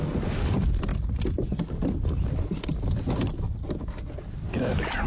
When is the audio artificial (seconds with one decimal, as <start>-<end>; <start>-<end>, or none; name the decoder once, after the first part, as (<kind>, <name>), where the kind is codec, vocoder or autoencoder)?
none